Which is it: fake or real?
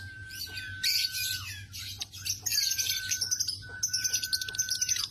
real